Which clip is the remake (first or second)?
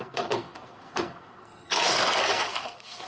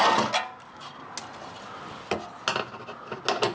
first